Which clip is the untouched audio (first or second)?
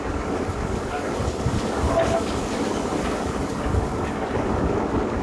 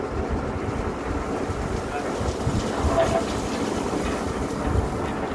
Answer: second